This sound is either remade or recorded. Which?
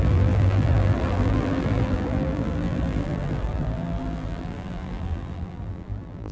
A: remade